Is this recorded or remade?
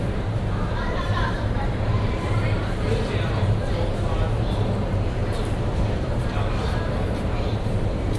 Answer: remade